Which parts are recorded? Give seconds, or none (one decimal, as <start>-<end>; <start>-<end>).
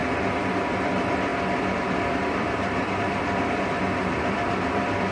0.0-0.7